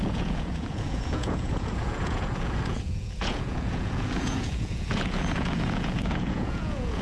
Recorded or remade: remade